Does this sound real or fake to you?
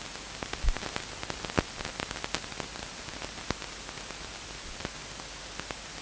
real